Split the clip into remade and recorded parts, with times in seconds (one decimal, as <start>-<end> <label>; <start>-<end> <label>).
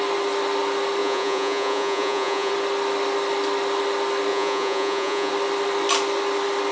0.0-1.0 recorded; 1.0-2.5 remade; 2.5-4.3 recorded; 4.3-5.3 remade; 5.3-6.7 recorded